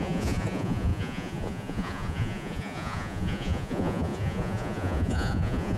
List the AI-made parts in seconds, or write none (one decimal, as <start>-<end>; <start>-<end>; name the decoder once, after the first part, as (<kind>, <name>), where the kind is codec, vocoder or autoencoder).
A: 0.0-5.8 (vocoder, Vocos)